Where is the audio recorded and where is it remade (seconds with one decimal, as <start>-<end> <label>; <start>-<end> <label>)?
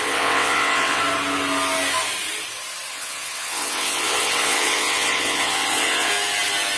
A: 0.0-1.0 remade; 1.0-2.9 recorded; 2.9-6.1 remade; 6.1-6.8 recorded